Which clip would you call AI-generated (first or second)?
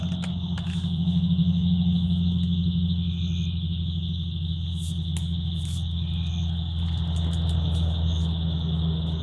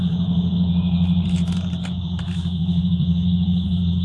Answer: second